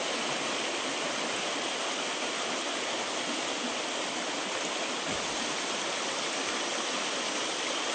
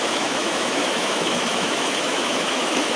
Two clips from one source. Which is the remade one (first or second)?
second